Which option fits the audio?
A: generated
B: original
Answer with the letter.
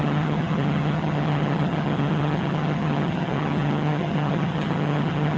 A